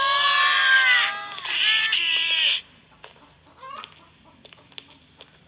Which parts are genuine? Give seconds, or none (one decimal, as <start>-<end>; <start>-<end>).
0.0-5.5